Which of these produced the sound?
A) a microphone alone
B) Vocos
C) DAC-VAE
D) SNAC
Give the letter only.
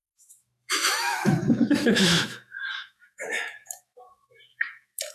C